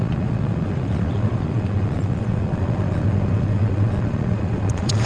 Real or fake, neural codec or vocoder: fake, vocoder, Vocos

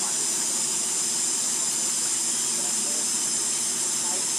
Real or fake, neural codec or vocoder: real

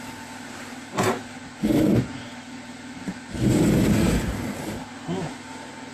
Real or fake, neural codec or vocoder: real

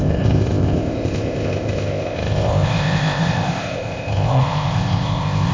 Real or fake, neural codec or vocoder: fake, codec, ZipCodec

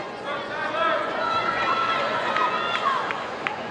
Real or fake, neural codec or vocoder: fake, vocoder, Vocos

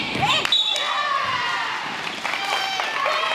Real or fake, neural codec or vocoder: real